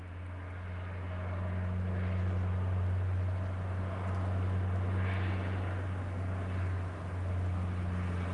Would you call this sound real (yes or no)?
yes